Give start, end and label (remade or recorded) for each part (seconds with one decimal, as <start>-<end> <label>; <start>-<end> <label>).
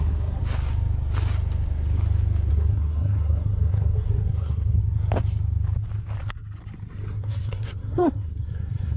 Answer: 0.0-0.4 remade; 0.4-2.5 recorded; 2.5-4.8 remade; 4.8-7.1 recorded; 7.1-9.0 remade